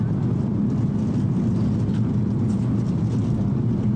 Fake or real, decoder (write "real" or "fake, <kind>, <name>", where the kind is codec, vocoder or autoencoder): real